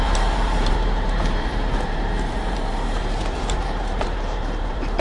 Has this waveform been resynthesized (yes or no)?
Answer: yes